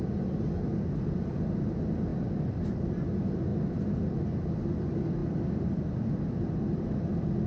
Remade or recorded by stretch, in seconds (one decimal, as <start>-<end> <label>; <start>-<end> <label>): 0.0-0.7 recorded; 0.7-1.5 remade; 1.5-2.1 recorded; 2.1-3.0 remade; 3.0-3.5 recorded; 3.5-4.0 remade; 4.0-5.2 recorded; 5.2-6.2 remade; 6.2-7.5 recorded